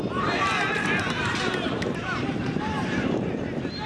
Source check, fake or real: fake